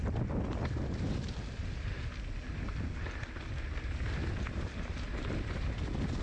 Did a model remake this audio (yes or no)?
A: no